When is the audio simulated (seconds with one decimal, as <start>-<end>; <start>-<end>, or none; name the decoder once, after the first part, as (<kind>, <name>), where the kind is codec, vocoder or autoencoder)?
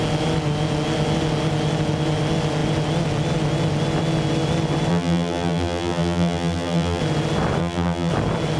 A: 4.9-7.0 (vocoder, BigVGAN v2); 7.6-8.1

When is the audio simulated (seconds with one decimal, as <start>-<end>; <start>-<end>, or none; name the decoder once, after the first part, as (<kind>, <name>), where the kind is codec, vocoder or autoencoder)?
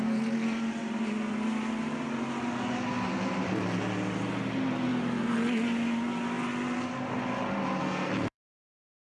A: 7.8-9.1 (codec, SNAC)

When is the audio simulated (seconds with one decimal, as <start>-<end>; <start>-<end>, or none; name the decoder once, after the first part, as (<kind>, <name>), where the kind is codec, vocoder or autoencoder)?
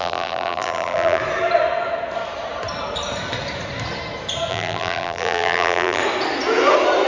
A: 0.0-1.2 (vocoder, BigVGAN v2); 4.5-6.0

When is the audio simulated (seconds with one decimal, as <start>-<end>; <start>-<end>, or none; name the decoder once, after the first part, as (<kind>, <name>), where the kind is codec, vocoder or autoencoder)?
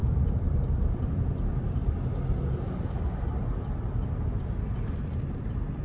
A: 0.0-1.3 (vocoder, BigVGAN v2)